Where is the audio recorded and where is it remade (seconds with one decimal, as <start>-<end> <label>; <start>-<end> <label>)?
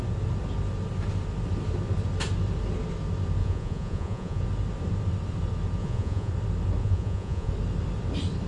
0.0-3.4 recorded; 3.4-4.4 remade; 4.4-5.8 recorded; 5.8-6.3 remade; 6.3-6.8 recorded; 6.8-7.5 remade; 7.5-8.5 recorded